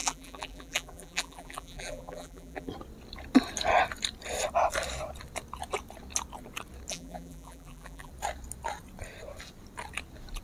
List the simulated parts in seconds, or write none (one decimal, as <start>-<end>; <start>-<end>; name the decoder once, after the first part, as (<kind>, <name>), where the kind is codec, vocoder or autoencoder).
0.0-2.7 (vocoder, BigVGAN v2); 6.9-8.1